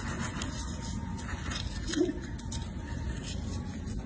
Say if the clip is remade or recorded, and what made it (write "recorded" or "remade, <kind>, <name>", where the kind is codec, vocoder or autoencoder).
recorded